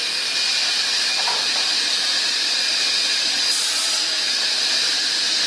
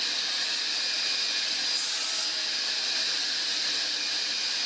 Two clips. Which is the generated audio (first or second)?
first